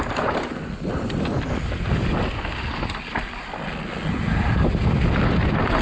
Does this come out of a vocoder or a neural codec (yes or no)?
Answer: no